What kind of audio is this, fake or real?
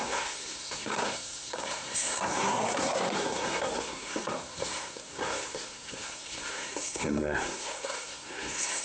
fake